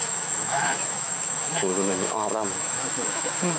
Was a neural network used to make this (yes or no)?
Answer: yes